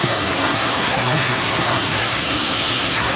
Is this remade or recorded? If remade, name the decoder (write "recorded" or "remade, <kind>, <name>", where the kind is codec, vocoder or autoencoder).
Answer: remade, codec, SNAC